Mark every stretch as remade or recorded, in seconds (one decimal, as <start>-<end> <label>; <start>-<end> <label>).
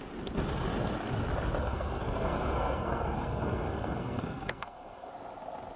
0.0-1.6 recorded; 1.6-5.1 remade; 5.1-5.8 recorded